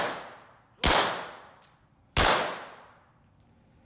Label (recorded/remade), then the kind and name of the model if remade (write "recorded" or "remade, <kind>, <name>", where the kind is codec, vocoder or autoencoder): recorded